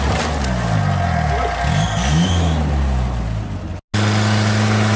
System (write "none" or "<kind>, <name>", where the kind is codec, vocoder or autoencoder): none